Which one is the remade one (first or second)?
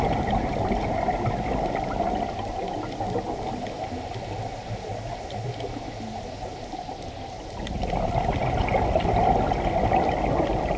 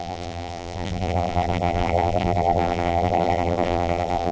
second